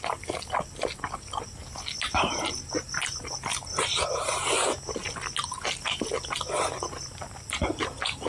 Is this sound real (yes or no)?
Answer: yes